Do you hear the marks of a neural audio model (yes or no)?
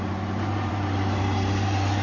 yes